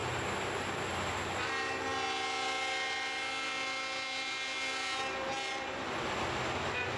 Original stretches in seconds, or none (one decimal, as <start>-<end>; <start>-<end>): 0.0-7.0